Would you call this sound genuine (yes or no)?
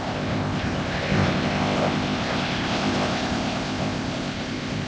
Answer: no